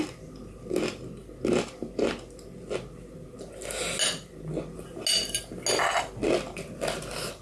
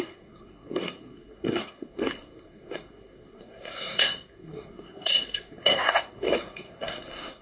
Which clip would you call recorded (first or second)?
first